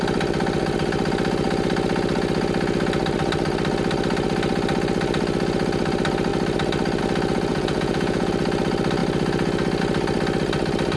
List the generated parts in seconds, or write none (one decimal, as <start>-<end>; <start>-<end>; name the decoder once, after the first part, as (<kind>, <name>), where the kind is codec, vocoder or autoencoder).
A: 7.5-8.3 (vocoder, Vocos)